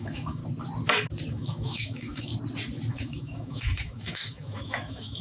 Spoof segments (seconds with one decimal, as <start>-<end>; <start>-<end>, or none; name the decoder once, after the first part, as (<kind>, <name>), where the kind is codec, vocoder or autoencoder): 0.0-0.4 (autoencoder, DAC-VAE); 1.3-2.3; 2.9-5.2